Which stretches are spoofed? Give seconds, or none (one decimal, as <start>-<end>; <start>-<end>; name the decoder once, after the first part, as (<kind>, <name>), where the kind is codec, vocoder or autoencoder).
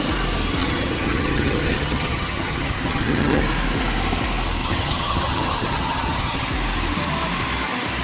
0.6-3.4 (vocoder, HiFi-GAN); 4.6-6.5